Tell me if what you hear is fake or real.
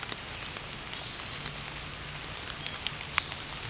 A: real